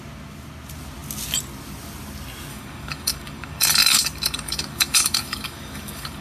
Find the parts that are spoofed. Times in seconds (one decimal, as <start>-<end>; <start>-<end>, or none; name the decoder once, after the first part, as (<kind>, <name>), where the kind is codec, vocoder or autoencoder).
2.5-6.2 (codec, DAC)